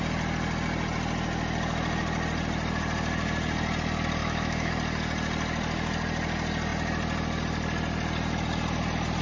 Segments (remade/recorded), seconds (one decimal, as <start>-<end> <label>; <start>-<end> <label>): 0.0-4.2 recorded; 4.2-4.7 remade; 4.7-9.2 recorded